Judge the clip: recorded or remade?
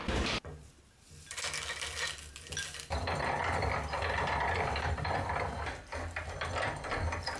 recorded